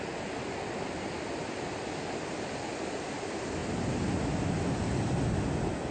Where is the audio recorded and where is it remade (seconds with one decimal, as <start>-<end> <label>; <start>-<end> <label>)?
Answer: 0.0-5.9 recorded

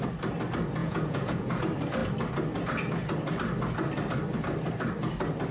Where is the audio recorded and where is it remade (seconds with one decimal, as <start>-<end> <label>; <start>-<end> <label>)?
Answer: 0.0-0.8 recorded; 0.8-1.6 remade; 1.6-5.5 recorded

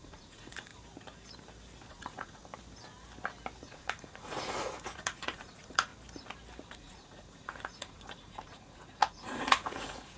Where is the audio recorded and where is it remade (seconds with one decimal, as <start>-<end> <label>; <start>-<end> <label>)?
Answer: 0.0-0.7 remade; 0.7-1.9 recorded; 1.9-2.4 remade; 2.4-3.6 recorded; 3.6-5.9 remade; 5.9-6.7 recorded; 6.7-10.2 remade

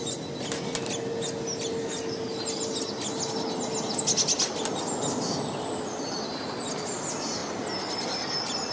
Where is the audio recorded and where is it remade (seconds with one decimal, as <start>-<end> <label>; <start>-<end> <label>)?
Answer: 0.0-8.7 recorded

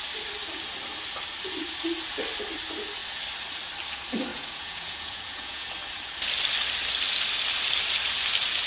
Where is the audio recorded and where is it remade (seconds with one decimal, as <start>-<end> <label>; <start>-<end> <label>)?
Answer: 0.0-4.3 recorded; 4.3-5.7 remade; 5.7-8.7 recorded

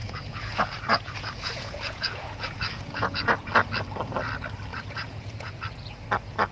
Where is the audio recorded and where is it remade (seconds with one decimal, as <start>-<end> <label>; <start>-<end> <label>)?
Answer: 0.0-3.5 remade; 3.5-4.7 recorded; 4.7-5.5 remade; 5.5-6.5 recorded

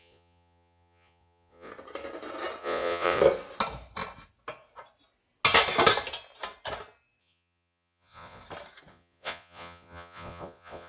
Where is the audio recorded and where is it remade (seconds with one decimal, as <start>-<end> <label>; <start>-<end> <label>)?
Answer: 0.0-1.7 remade; 1.7-2.6 recorded; 2.6-3.2 remade; 3.2-7.2 recorded; 7.2-8.4 remade; 8.4-8.9 recorded; 8.9-10.9 remade

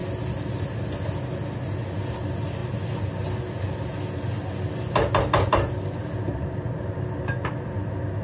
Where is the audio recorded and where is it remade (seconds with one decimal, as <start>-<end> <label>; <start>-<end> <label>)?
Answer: 0.0-8.2 recorded